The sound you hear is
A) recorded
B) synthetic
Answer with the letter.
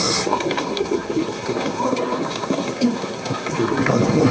B